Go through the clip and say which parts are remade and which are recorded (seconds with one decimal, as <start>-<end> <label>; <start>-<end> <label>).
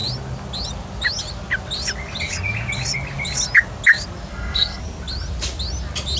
0.0-4.3 recorded; 4.3-4.8 remade; 4.8-6.2 recorded